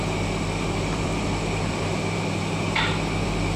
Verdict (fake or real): fake